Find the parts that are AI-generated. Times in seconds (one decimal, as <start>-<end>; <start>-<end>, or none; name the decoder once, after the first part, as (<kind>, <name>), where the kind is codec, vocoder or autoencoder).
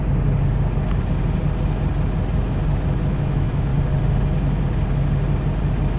3.1-3.7 (autoencoder, DAC-VAE)